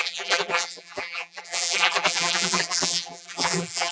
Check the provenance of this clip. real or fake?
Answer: fake